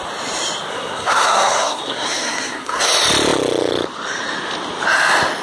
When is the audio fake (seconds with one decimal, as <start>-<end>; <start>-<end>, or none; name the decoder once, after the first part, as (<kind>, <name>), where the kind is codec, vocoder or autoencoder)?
0.7-2.8 (codec, SNAC)

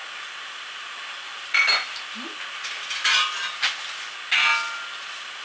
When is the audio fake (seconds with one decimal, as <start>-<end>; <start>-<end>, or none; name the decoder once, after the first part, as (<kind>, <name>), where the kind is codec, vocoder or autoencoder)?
none